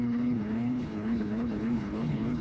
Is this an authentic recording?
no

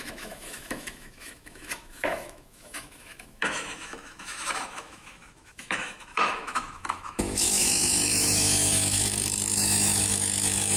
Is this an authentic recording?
no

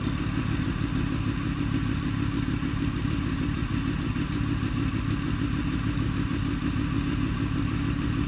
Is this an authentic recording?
yes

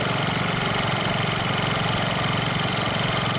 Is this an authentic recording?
yes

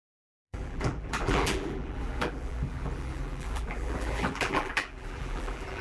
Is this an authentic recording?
no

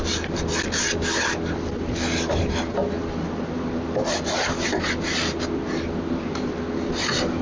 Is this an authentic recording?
yes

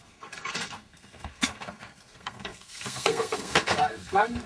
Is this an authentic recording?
no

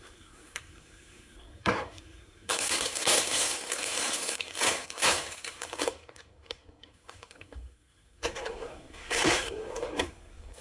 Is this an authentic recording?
no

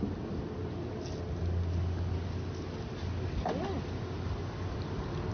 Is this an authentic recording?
yes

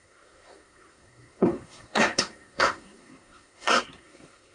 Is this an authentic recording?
no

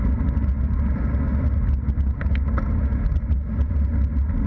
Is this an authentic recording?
yes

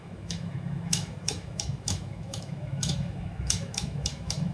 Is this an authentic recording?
no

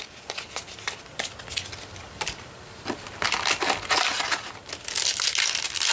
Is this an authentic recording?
yes